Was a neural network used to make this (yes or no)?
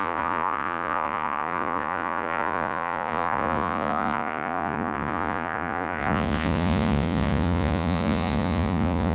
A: yes